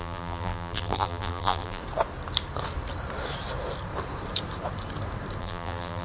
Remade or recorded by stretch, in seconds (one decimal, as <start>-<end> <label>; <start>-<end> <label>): 0.0-1.8 remade; 1.8-5.4 recorded; 5.4-6.0 remade